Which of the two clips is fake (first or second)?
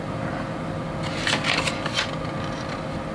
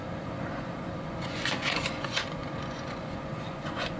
second